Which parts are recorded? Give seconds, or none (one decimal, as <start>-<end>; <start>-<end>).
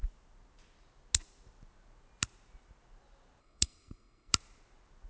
0.0-3.4; 4.3-5.1